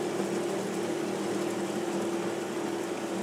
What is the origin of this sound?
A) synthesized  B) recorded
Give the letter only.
B